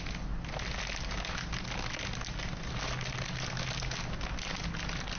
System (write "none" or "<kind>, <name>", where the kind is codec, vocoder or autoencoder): none